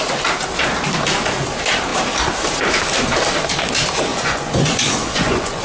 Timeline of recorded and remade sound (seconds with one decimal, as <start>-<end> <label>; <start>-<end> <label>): 0.0-4.1 recorded; 4.1-5.6 remade